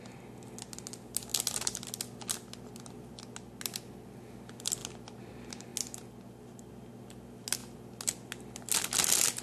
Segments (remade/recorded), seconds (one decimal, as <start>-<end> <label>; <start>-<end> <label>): 0.0-9.4 recorded